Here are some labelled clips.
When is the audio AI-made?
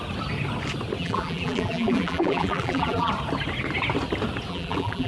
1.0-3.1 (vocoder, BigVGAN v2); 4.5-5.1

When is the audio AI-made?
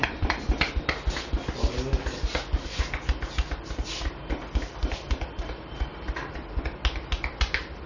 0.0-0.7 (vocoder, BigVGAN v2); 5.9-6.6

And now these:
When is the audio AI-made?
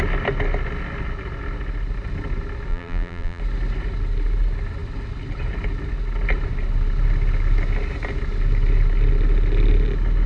2.7-3.4 (vocoder, BigVGAN v2)